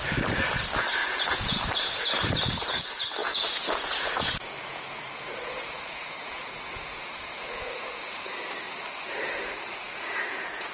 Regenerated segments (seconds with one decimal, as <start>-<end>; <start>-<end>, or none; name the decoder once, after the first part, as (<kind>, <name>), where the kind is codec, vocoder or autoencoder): 1.0-1.6 (vocoder, Vocos); 3.2-8.2; 9.8-10.7